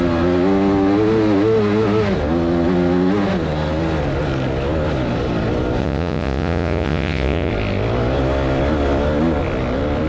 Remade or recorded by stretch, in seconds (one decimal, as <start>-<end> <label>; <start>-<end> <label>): 0.0-5.8 recorded; 5.8-7.5 remade; 7.5-10.1 recorded